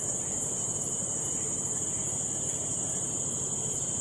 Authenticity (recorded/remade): remade